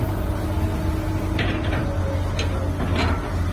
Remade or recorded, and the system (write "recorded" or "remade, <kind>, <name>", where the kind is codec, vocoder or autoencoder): recorded